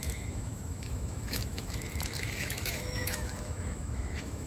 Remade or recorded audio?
remade